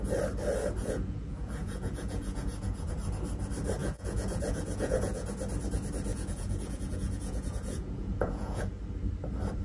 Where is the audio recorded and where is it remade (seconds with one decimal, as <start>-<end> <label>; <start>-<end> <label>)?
0.0-0.8 recorded; 0.8-2.9 remade; 2.9-3.8 recorded; 3.8-5.3 remade; 5.3-6.1 recorded; 6.1-8.7 remade; 8.7-9.6 recorded